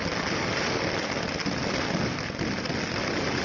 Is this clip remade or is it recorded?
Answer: recorded